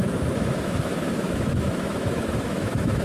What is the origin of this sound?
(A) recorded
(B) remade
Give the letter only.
B